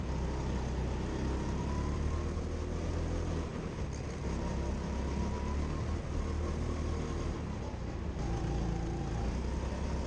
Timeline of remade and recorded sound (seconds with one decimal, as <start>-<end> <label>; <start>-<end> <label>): 0.0-10.1 recorded